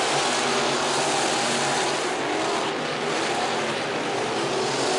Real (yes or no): yes